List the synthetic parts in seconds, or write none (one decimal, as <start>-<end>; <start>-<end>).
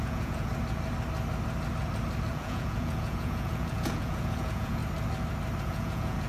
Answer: 0.0-0.5; 2.3-4.8; 5.6-6.3